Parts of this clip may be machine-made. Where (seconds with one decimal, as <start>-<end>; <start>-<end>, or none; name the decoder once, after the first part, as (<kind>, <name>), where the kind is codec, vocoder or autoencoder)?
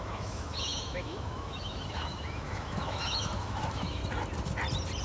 0.0-4.0 (autoencoder, DAC-VAE)